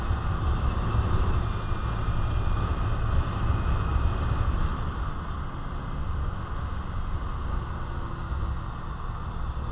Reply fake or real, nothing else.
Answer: real